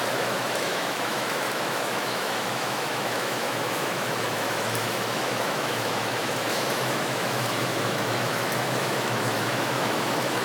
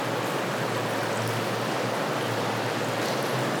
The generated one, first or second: first